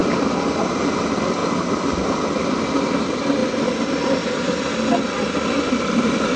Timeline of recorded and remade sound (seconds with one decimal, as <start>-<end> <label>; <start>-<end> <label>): 0.0-6.4 recorded